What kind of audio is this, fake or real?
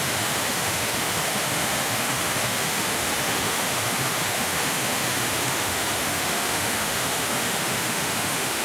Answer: fake